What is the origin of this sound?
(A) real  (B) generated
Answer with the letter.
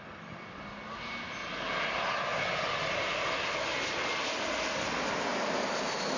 A